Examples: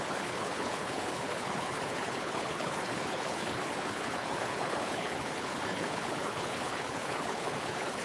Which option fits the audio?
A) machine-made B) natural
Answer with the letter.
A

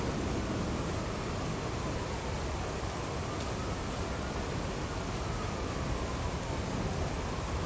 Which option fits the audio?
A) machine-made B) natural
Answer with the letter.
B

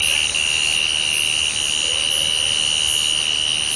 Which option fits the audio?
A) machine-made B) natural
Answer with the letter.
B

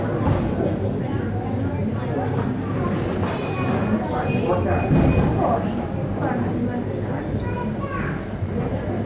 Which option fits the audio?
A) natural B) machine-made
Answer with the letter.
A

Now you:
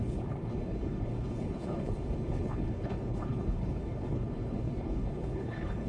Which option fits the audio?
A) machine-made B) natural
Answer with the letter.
A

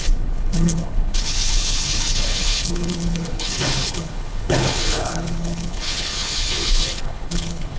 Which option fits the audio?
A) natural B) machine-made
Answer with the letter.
B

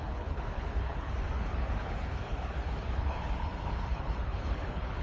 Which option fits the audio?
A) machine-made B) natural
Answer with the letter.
A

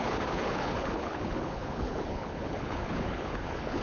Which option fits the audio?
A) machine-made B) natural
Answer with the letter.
A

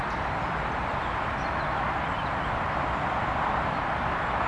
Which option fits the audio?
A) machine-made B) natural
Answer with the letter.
B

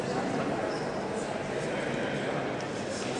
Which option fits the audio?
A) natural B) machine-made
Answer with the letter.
A